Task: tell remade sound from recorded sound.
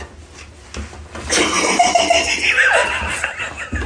recorded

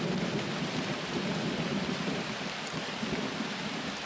remade